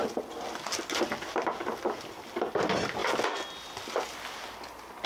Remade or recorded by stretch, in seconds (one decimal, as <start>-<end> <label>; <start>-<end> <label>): 0.0-5.1 recorded